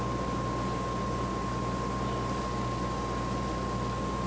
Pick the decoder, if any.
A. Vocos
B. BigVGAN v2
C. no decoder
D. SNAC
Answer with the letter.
C